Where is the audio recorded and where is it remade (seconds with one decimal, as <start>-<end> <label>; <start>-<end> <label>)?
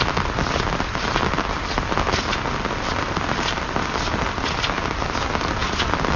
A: 0.0-6.2 recorded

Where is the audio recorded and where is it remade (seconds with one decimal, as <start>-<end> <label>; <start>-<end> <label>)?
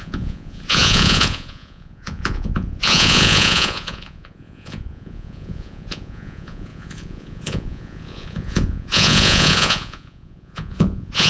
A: 0.0-11.3 remade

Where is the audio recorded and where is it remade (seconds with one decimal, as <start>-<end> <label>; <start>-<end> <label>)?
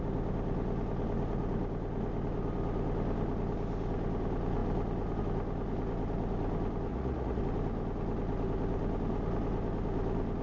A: 0.0-6.9 recorded; 6.9-7.4 remade; 7.4-10.4 recorded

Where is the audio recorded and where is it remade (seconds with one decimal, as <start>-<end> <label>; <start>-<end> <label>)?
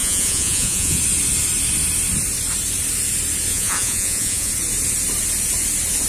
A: 0.0-1.0 remade; 1.0-3.5 recorded; 3.5-4.5 remade; 4.5-6.1 recorded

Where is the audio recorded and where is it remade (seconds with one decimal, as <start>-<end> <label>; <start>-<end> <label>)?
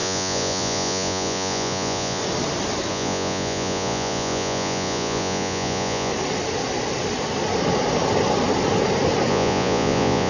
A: 0.0-2.2 remade; 2.2-2.9 recorded; 2.9-6.1 remade; 6.1-9.3 recorded; 9.3-10.3 remade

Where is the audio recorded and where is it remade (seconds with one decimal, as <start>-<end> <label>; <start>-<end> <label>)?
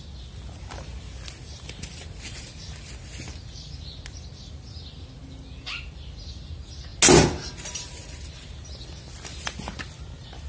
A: 0.0-10.5 recorded